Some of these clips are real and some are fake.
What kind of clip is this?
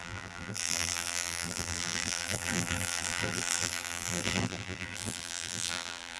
fake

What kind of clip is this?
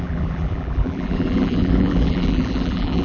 fake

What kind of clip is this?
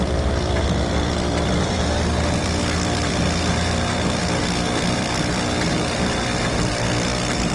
fake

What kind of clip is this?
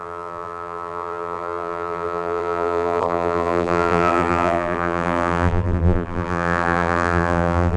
fake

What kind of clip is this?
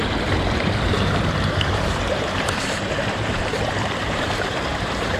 fake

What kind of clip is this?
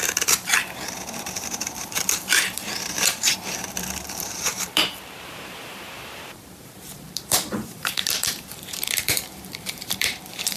fake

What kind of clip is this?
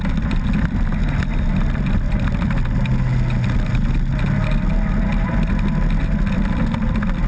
real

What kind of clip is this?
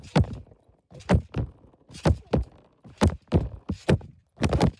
real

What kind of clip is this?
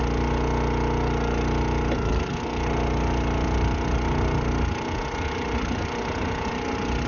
real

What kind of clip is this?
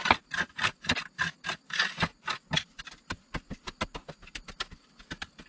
real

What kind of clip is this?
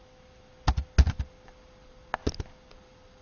real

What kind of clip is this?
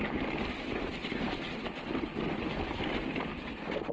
real